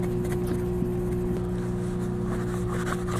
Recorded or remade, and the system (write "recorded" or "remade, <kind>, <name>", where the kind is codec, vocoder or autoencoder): recorded